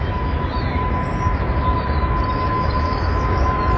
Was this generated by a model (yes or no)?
yes